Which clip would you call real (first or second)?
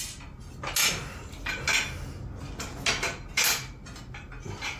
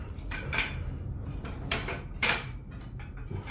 first